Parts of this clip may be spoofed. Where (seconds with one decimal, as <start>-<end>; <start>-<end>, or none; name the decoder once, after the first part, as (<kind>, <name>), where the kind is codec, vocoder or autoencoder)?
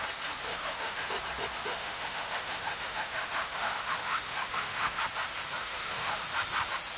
0.5-1.1 (autoencoder, DAC-VAE); 1.7-5.0; 5.6-6.2